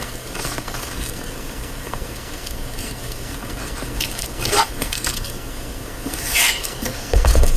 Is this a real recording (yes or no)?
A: no